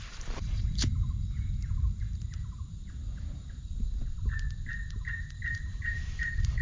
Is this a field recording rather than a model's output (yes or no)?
no